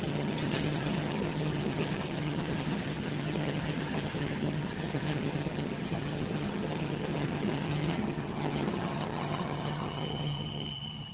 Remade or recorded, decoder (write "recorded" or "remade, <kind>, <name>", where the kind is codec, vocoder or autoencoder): remade, vocoder, HiFi-GAN